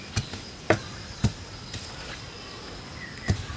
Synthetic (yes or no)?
yes